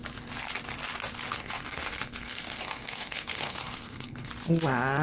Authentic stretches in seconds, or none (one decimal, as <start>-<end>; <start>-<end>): 0.0-1.3; 4.3-5.0